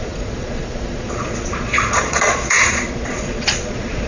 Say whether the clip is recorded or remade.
remade